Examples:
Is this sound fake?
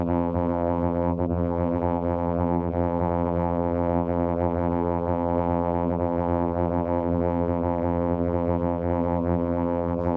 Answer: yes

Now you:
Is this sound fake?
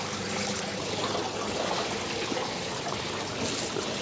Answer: no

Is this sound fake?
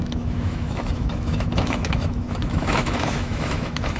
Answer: yes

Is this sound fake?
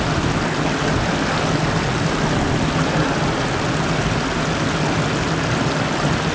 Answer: no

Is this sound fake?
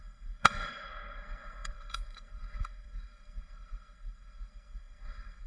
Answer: yes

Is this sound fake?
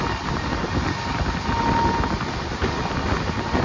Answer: no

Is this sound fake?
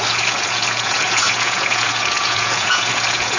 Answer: yes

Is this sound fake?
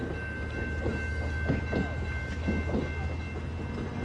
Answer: no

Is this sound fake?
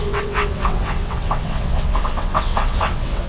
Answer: yes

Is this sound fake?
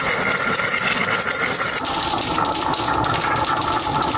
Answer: no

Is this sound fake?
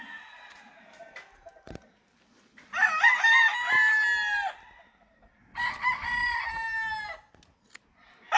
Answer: no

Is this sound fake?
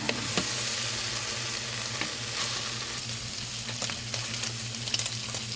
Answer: no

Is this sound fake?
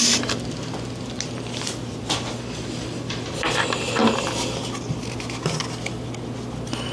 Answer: no